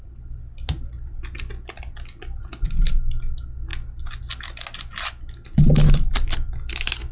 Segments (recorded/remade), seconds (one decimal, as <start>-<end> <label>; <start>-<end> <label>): 0.0-7.1 recorded